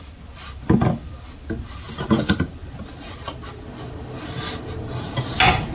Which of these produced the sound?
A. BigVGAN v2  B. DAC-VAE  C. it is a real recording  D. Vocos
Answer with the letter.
C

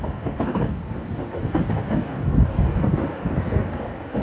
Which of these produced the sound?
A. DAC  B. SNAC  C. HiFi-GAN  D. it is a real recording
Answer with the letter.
A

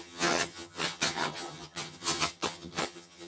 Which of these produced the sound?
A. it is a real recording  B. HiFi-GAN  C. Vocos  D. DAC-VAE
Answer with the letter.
B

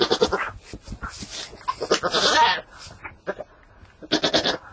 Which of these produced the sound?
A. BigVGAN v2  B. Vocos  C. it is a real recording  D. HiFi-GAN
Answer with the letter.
C